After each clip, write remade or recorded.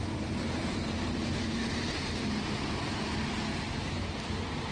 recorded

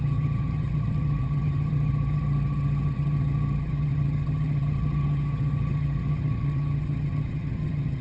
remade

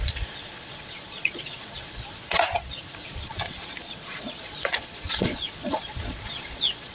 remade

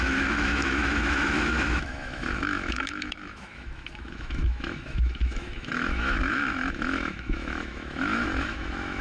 remade